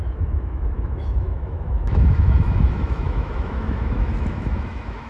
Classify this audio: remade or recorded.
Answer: remade